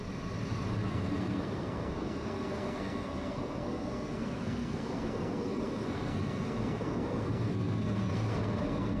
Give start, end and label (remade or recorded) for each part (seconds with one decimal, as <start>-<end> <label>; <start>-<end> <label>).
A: 0.0-0.9 recorded; 0.9-9.0 remade